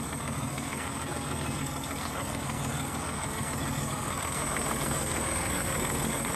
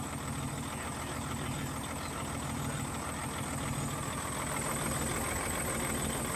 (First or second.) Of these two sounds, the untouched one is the second